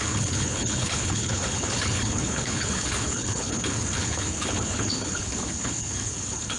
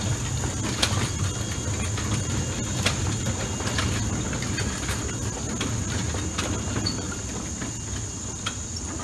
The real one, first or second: second